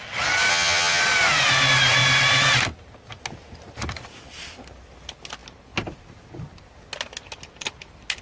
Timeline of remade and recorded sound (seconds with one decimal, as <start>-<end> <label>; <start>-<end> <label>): 0.0-0.5 recorded; 0.5-1.0 remade; 1.0-8.2 recorded